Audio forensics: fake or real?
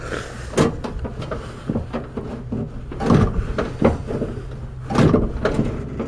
real